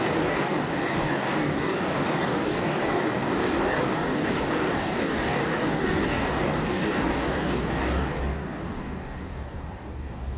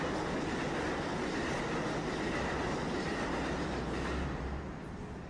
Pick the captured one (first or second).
second